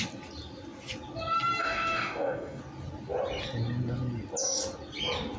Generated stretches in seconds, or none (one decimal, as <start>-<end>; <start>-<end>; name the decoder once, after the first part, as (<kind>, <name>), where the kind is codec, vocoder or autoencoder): 1.6-2.6 (codec, DAC)